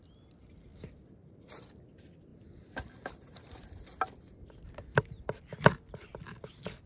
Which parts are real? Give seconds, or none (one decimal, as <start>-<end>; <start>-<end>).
0.0-0.7; 1.8-6.9